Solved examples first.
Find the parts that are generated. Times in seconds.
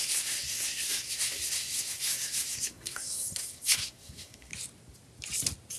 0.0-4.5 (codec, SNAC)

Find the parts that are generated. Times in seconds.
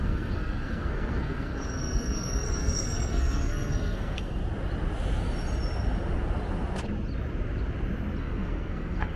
0.0-4.4 (codec, SNAC); 8.2-9.2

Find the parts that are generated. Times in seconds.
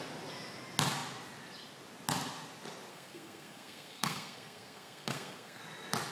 2.9-5.6 (codec, SNAC)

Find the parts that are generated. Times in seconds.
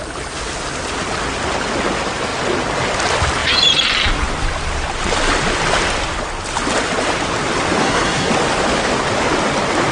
7.8-8.3 (codec, SNAC)